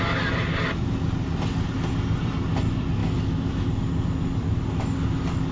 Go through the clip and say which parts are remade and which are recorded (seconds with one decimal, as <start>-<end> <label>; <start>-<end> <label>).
0.0-3.0 recorded; 3.0-3.7 remade; 3.7-5.5 recorded